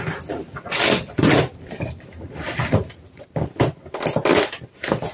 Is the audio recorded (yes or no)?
yes